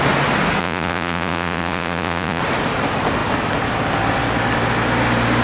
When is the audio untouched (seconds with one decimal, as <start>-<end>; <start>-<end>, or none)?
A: 0.0-0.6; 2.4-5.4